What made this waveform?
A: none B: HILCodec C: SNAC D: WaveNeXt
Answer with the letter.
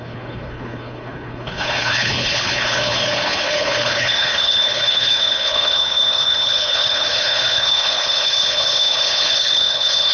B